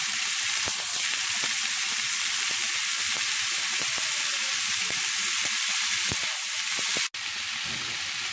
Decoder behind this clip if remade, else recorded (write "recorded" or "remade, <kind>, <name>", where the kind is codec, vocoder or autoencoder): recorded